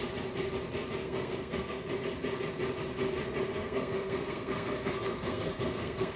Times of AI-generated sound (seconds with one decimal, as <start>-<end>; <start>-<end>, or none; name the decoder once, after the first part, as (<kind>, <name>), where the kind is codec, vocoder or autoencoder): 1.0-1.9 (codec, SNAC); 3.5-6.2